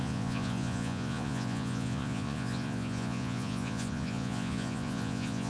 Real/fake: fake